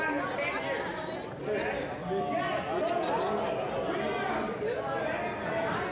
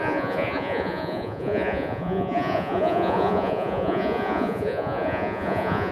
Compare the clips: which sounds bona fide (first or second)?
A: first